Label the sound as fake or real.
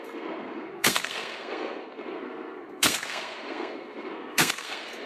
fake